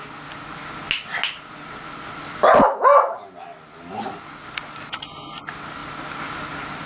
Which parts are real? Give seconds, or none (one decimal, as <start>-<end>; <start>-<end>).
0.0-6.9